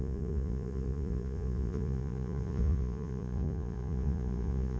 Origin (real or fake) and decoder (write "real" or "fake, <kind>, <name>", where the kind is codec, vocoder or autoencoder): fake, vocoder, Vocos